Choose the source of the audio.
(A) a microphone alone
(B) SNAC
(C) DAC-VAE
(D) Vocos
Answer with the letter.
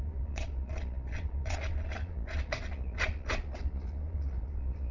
D